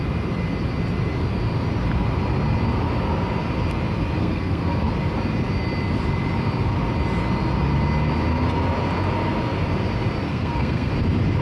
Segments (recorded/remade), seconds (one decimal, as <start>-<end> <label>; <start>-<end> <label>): 0.0-4.2 recorded; 4.2-4.9 remade; 4.9-10.3 recorded; 10.3-10.9 remade; 10.9-11.4 recorded